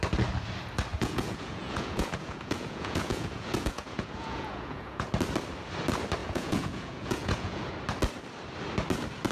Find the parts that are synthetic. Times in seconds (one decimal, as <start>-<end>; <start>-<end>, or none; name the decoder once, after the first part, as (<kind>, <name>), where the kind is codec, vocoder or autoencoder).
0.9-5.1 (vocoder, Vocos); 6.2-7.7